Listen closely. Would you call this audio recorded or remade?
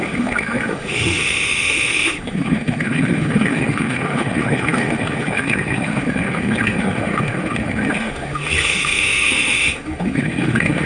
remade